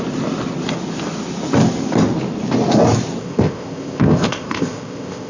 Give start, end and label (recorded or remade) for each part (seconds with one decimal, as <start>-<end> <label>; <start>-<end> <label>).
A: 0.0-3.2 recorded; 3.2-5.3 remade